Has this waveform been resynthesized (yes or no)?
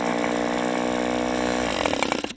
no